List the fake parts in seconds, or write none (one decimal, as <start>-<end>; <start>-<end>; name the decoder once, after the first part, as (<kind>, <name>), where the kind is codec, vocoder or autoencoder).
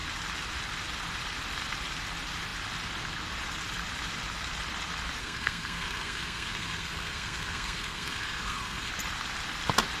5.2-8.9 (codec, SNAC)